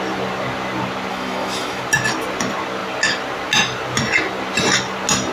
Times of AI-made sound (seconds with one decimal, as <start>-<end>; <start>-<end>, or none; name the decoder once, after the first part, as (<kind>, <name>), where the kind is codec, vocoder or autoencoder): 1.1-1.8 (autoencoder, DAC-VAE)